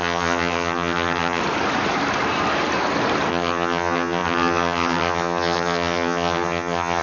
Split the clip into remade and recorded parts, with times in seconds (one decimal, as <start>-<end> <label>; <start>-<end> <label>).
0.0-1.4 remade; 1.4-3.3 recorded; 3.3-7.0 remade